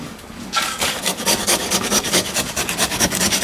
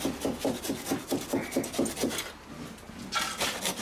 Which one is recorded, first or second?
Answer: second